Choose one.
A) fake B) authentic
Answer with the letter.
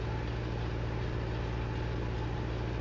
B